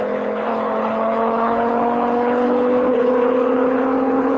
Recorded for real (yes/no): no